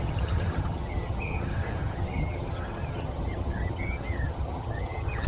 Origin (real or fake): fake